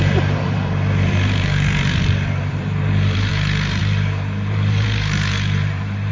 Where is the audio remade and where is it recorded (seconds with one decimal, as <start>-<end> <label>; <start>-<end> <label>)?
0.0-6.1 remade